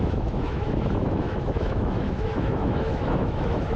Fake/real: fake